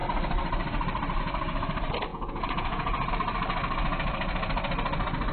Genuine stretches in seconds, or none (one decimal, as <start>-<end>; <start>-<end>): 0.0-2.1; 3.1-5.3